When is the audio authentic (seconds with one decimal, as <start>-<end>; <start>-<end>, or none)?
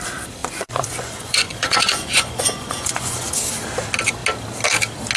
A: 0.0-0.4; 3.5-5.2